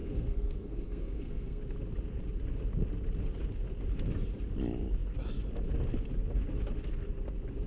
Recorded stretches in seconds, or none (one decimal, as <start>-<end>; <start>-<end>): 1.6-7.7